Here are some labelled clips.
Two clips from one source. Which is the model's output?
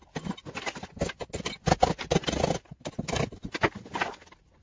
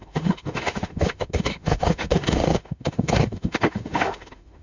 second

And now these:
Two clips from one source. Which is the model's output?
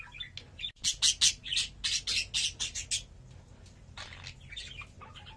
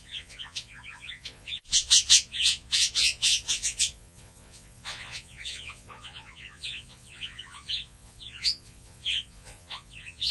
second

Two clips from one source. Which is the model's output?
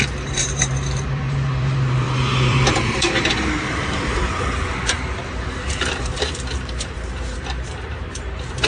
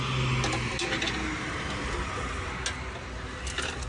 first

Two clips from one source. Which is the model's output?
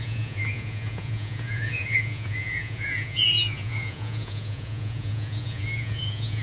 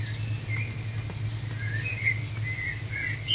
first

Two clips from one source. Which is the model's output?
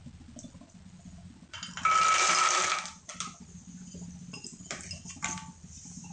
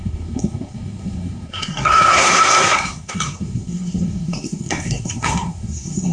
second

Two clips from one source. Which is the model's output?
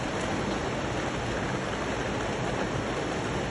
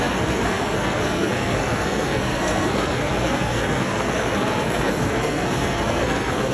second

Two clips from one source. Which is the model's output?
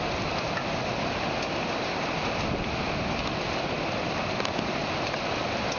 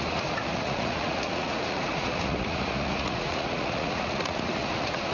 second